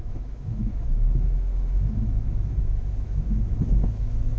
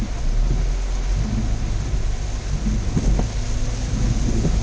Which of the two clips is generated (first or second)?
first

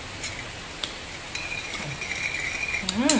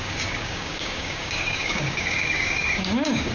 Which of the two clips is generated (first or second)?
second